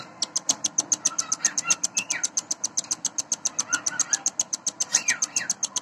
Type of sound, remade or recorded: recorded